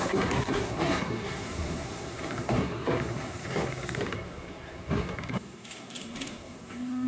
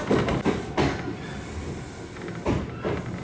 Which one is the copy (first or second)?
first